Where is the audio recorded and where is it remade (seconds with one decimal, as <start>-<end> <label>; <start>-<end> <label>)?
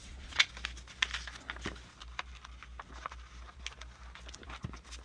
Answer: 0.0-0.5 remade; 0.5-5.0 recorded